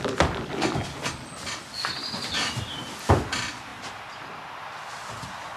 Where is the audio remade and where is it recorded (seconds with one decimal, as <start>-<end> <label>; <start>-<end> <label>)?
0.0-5.6 recorded